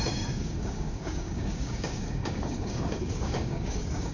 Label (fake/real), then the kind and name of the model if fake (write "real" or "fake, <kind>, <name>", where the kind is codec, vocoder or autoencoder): fake, codec, DAC